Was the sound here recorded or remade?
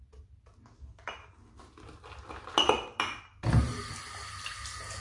recorded